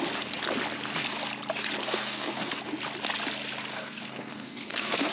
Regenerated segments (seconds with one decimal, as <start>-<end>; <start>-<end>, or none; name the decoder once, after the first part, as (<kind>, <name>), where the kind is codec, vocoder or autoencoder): 1.8-2.6 (codec, SNAC); 3.7-5.1